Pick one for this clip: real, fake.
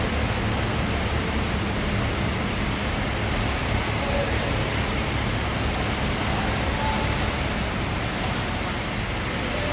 real